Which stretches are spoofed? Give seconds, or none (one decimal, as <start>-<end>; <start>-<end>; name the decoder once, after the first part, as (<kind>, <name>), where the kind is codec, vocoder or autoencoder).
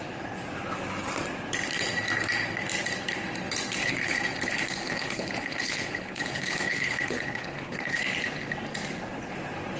3.8-8.0 (codec, HILCodec)